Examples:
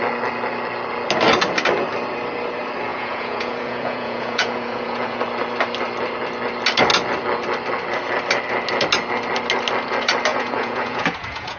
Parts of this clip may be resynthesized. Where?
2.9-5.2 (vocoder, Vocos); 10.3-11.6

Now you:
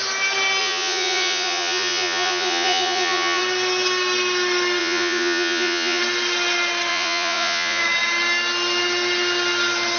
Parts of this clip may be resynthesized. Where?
0.6-3.4 (vocoder, Vocos); 4.8-6.0; 6.9-7.8

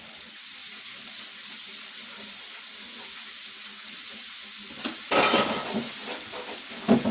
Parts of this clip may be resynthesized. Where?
none

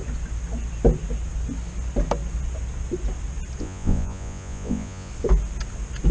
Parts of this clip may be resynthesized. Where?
3.6-5.1 (vocoder, Vocos)

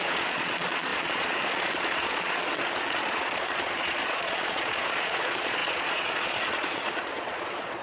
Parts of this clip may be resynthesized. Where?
0.0-7.8 (vocoder, Vocos)